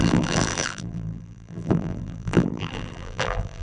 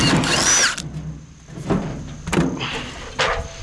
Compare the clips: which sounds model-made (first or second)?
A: first